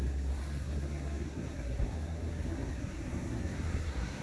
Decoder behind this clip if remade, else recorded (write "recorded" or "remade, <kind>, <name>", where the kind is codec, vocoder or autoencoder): remade, codec, SNAC